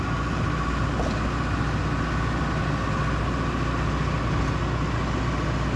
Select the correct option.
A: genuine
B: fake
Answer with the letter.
A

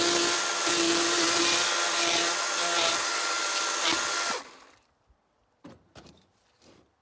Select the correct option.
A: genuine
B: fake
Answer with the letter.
B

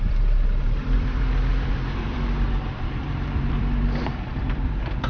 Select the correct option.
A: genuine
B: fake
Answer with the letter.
B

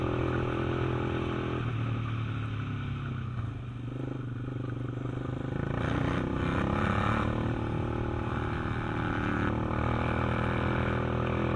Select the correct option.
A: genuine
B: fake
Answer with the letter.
A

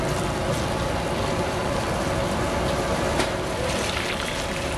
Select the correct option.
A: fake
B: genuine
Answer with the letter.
B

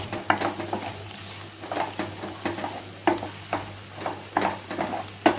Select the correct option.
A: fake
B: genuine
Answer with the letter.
B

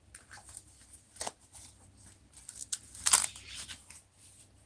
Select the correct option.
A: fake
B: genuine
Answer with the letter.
A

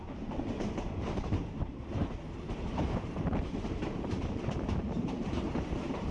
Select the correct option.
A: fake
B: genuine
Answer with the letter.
A